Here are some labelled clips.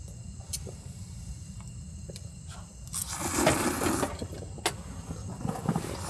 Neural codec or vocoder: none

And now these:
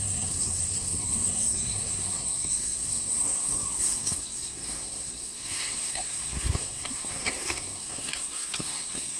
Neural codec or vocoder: codec, SNAC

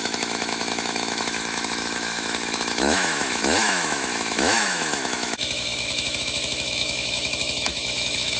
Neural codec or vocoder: autoencoder, DAC-VAE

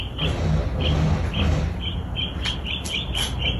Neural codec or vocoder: none